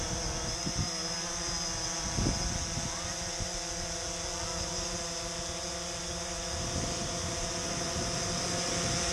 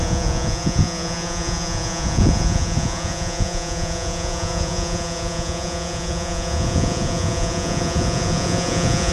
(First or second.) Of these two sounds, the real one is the first